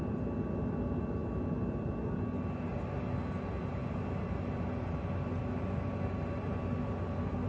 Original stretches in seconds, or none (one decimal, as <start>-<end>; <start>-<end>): 0.0-7.5